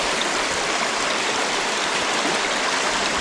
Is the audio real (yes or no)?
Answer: yes